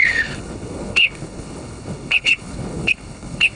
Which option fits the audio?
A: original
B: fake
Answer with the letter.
B